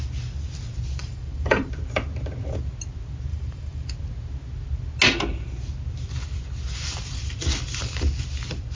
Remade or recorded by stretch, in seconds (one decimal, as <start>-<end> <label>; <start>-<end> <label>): 0.0-1.0 recorded; 1.0-1.7 remade; 1.7-3.3 recorded; 3.3-3.9 remade; 3.9-8.7 recorded